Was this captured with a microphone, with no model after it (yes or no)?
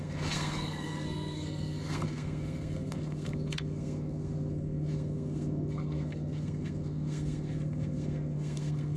no